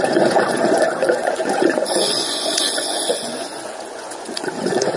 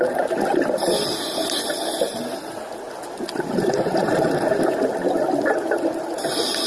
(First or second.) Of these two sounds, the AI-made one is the first